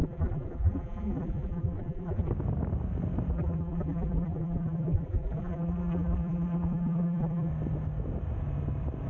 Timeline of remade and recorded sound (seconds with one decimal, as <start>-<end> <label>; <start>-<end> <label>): 0.0-2.3 remade; 2.3-3.3 recorded; 3.3-7.5 remade; 7.5-9.1 recorded